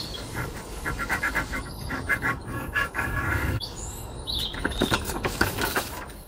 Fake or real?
fake